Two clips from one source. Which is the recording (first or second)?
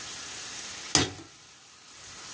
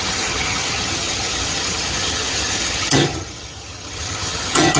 first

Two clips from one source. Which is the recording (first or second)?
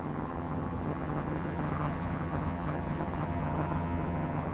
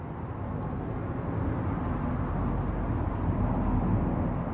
second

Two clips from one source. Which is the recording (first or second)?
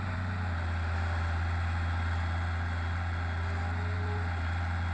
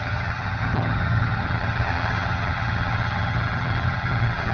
first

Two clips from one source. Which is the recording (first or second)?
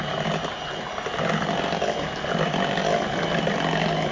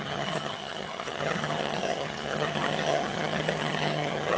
first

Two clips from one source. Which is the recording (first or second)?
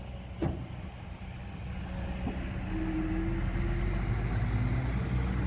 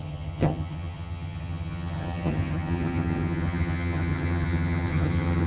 first